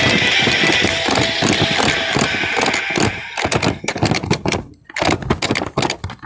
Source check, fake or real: real